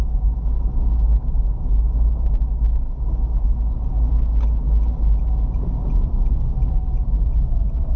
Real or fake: real